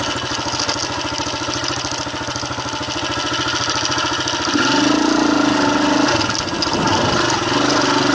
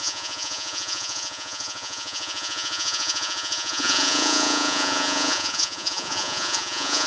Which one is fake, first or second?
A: second